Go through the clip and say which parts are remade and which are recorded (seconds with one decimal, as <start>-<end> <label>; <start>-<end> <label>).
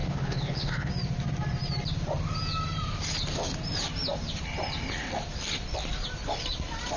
0.0-0.9 remade; 0.9-7.0 recorded